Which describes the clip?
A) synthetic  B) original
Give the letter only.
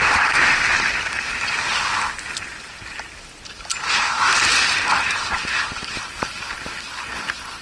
B